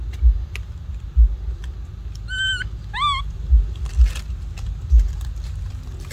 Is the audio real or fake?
real